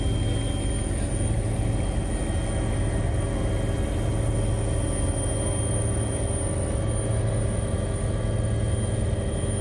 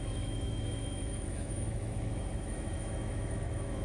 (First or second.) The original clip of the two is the first